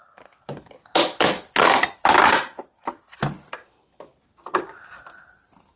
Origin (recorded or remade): recorded